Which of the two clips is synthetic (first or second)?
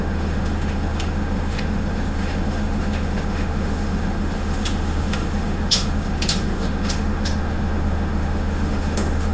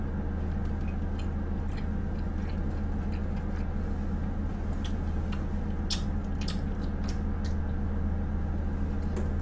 first